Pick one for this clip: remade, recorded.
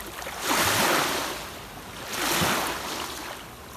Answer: recorded